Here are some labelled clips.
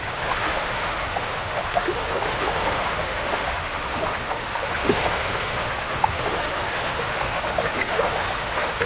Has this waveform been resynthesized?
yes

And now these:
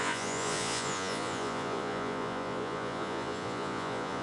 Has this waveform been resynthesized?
yes